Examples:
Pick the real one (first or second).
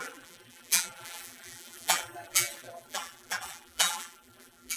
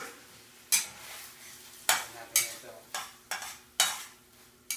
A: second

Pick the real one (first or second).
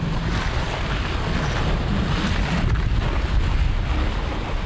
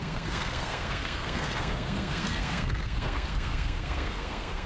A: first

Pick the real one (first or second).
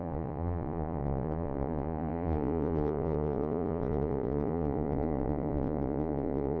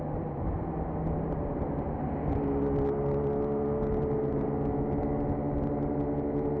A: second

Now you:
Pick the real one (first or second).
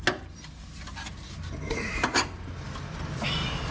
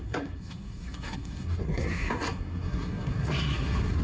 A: first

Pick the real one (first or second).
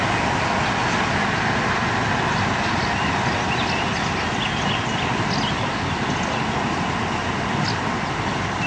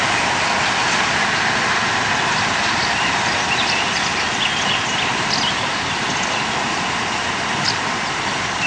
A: first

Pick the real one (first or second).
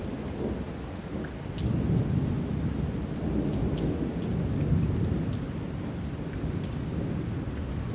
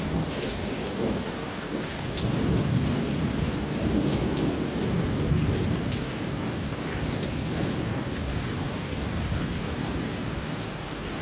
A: first